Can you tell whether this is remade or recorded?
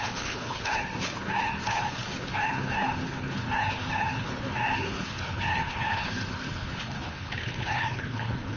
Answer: remade